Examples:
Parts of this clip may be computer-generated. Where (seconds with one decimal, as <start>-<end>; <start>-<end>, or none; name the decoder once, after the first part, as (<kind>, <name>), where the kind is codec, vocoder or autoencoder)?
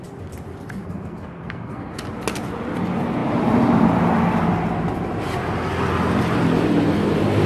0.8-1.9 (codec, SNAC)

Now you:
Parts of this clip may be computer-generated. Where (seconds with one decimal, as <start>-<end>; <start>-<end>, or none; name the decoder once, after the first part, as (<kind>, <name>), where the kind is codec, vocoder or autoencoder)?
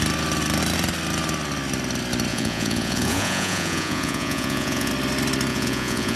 2.3-4.9 (vocoder, Vocos); 5.5-6.2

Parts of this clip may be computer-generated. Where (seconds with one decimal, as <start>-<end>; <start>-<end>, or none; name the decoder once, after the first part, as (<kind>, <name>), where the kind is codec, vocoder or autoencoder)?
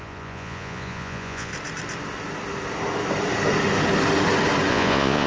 0.0-1.5 (vocoder, Vocos); 4.7-5.3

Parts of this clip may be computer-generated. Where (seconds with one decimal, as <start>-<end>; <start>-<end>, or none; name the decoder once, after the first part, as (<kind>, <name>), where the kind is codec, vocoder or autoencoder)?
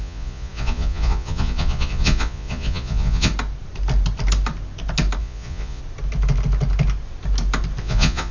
0.0-3.3 (vocoder, Vocos); 5.2-5.8; 7.8-8.3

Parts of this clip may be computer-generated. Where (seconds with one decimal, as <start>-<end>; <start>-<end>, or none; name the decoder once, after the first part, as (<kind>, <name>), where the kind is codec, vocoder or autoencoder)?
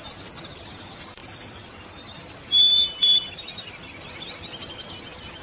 none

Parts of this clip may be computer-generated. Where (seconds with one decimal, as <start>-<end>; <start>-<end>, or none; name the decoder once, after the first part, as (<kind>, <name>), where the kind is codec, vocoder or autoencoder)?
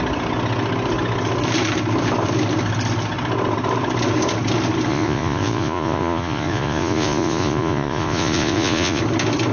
4.9-9.0 (vocoder, Vocos)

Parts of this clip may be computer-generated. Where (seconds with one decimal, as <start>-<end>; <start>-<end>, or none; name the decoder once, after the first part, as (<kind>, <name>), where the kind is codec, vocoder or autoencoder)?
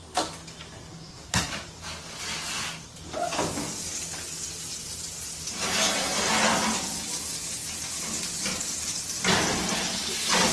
0.9-1.4 (codec, SNAC)